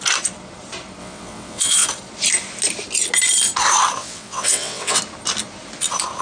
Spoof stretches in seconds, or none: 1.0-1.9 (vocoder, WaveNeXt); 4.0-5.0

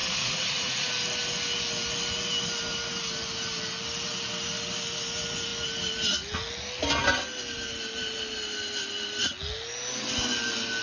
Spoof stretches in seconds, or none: 0.0-0.9 (vocoder, Vocos)

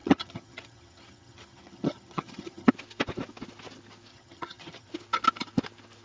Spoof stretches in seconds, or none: 0.0-2.7 (vocoder, HiFi-GAN); 4.1-4.9

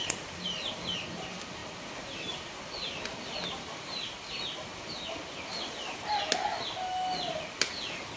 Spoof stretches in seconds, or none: none